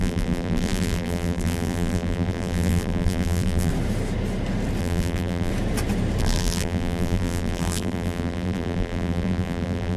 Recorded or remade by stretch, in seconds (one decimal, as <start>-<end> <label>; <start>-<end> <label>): 0.0-3.7 remade; 3.7-4.8 recorded; 4.8-5.5 remade; 5.5-6.2 recorded; 6.2-10.0 remade